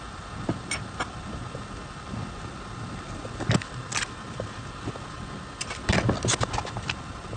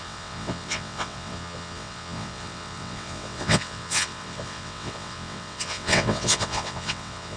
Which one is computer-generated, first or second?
second